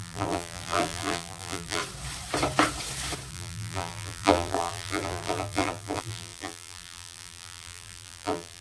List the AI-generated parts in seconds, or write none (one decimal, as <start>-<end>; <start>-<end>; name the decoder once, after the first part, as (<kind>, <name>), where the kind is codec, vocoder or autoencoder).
0.0-1.8 (vocoder, BigVGAN v2); 3.3-8.6